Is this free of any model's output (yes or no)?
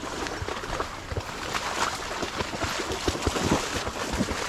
yes